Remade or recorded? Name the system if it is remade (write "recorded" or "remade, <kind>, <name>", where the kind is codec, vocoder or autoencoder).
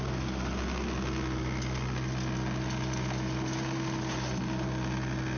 recorded